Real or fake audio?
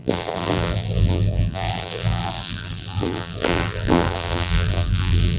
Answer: fake